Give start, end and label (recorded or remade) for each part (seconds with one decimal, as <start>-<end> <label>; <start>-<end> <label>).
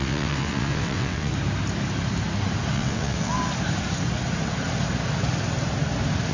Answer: 0.0-1.3 remade; 1.3-2.7 recorded; 2.7-3.4 remade; 3.4-6.3 recorded